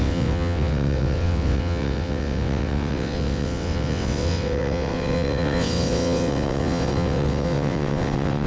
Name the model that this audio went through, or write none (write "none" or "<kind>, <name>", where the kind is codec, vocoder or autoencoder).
vocoder, WaveNeXt